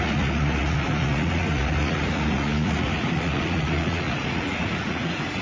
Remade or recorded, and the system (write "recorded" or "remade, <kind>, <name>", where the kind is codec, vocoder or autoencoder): remade, vocoder, Vocos